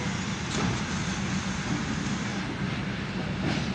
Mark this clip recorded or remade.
recorded